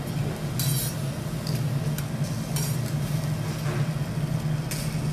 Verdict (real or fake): real